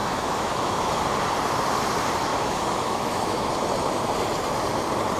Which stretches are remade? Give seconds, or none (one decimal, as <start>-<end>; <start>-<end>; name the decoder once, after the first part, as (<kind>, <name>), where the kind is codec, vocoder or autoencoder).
0.0-0.9 (autoencoder, DAC-VAE); 2.3-3.5